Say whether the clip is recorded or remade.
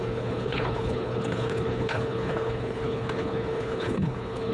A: remade